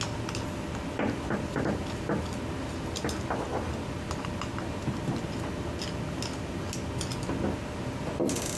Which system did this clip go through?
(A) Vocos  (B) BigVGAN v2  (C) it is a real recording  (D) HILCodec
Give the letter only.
C